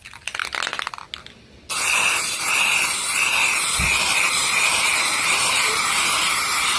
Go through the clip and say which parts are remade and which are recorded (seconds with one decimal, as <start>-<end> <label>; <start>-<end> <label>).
0.0-6.8 recorded